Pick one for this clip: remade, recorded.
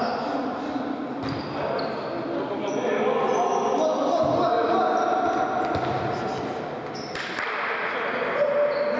recorded